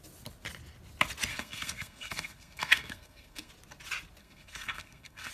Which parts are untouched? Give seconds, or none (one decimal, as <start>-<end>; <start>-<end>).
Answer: 0.0-1.3; 3.5-4.2